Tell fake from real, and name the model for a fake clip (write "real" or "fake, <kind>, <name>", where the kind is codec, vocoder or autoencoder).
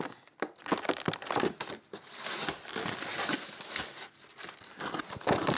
fake, vocoder, BigVGAN v2